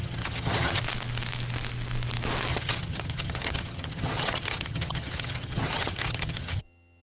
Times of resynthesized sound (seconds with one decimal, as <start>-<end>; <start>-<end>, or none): 0.0-0.8; 2.5-7.0